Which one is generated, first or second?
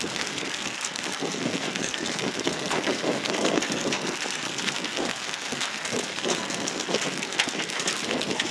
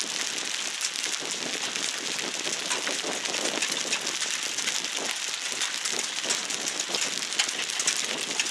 first